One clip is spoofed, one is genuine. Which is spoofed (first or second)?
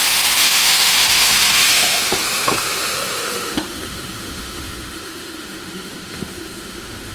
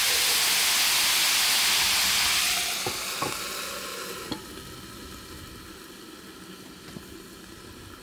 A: first